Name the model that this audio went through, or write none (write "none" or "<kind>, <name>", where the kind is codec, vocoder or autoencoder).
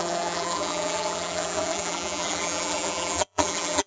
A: vocoder, BigVGAN v2